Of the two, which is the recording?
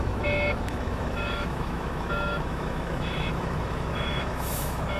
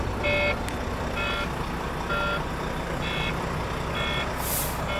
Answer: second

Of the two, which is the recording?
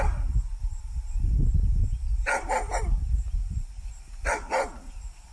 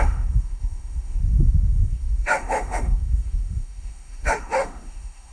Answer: first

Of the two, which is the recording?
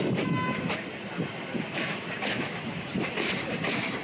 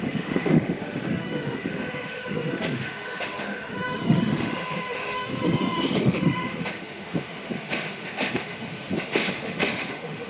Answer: first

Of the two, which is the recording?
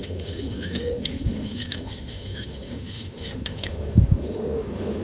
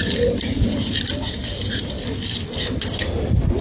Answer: second